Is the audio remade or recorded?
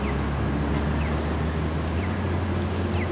recorded